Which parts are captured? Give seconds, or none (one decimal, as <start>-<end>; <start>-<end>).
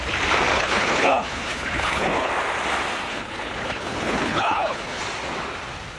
0.0-0.5; 2.3-3.1; 5.0-6.0